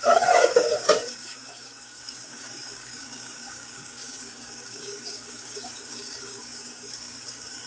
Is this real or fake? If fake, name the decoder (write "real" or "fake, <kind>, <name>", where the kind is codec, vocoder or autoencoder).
fake, codec, DAC